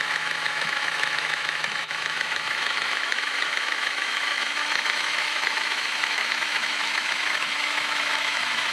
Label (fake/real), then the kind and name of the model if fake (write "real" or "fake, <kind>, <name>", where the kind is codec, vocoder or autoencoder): fake, autoencoder, DAC-VAE